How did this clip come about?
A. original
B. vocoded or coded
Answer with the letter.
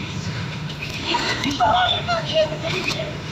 B